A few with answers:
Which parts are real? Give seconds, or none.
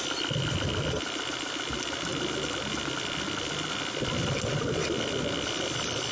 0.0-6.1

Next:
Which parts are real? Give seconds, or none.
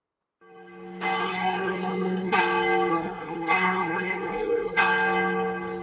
0.0-1.2; 2.4-2.9; 4.8-5.8